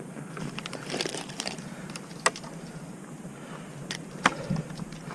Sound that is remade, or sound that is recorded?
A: remade